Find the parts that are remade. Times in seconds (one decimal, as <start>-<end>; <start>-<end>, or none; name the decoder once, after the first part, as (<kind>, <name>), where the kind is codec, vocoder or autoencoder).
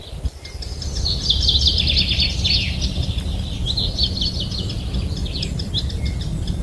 5.2-5.9 (vocoder, BigVGAN v2)